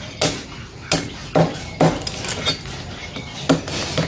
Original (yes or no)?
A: yes